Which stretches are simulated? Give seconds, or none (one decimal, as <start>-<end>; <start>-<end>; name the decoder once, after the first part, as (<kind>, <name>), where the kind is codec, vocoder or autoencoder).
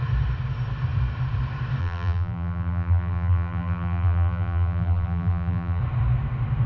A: 1.8-5.8 (vocoder, BigVGAN v2)